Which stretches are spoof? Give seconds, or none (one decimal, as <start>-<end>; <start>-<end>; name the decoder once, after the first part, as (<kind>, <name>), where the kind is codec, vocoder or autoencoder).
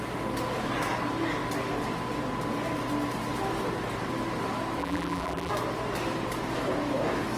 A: 4.8-5.5 (vocoder, BigVGAN v2)